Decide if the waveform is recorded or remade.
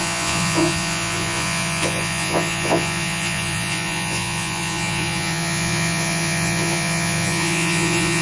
remade